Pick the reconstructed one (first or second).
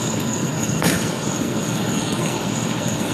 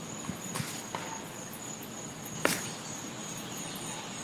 first